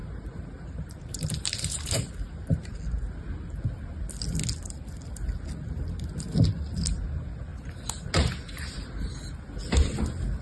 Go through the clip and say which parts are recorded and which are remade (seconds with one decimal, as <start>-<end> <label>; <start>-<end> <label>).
0.0-2.8 remade; 2.8-7.5 recorded; 7.5-9.1 remade; 9.1-10.4 recorded